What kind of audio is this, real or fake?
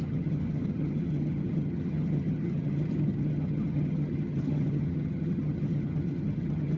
fake